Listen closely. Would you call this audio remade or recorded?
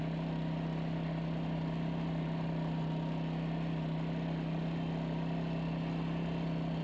recorded